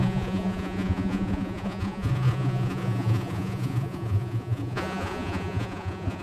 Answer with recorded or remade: remade